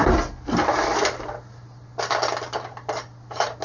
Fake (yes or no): no